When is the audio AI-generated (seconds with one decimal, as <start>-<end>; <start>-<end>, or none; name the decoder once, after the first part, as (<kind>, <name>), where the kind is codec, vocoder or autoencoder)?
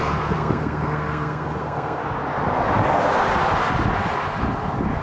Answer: 0.0-2.0 (codec, SNAC)